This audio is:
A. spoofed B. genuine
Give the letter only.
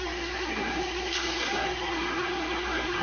A